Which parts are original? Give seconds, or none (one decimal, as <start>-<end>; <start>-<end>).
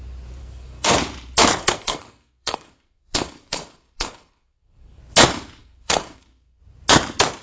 0.0-0.4; 1.0-1.6; 5.0-5.6; 6.6-7.4